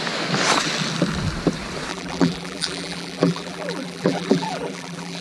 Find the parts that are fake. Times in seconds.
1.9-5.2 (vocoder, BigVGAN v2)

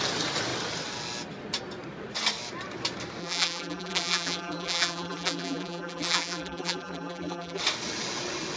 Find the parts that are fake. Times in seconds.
3.2-7.6 (vocoder, BigVGAN v2)